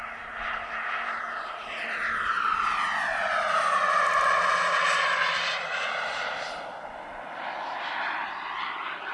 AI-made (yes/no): no